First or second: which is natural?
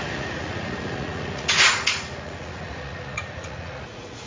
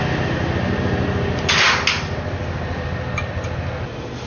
second